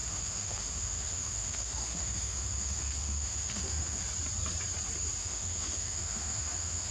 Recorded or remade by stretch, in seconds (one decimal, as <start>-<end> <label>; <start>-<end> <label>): 0.0-4.0 remade; 4.0-5.2 recorded; 5.2-6.9 remade